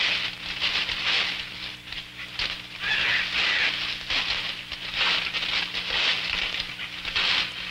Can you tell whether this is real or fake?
real